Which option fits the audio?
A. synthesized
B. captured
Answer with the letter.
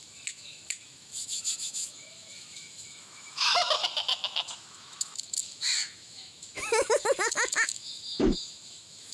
A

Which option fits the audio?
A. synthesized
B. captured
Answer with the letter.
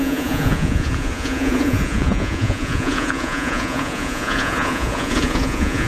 A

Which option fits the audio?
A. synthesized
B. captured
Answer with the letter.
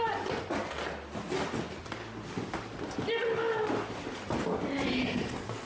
B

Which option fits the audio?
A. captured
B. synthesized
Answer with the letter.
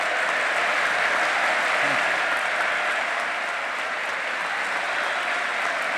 A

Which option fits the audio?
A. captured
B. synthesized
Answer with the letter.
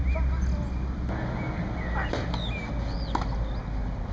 A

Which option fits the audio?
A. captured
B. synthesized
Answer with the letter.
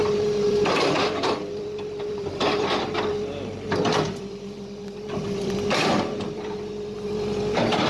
B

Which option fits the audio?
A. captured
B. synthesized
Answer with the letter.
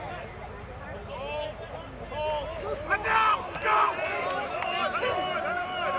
A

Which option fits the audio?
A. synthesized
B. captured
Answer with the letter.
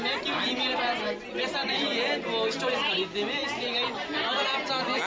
B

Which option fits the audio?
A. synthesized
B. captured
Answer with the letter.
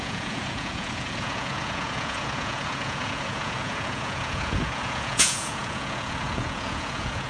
A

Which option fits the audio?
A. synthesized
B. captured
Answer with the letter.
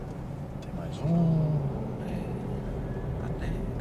B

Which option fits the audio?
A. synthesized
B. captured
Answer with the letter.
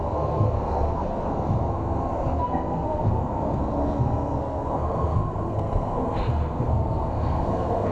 A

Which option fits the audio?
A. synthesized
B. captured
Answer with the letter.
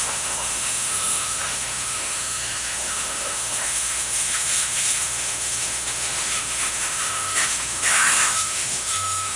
A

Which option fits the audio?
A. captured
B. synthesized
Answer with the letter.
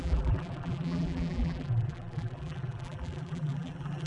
B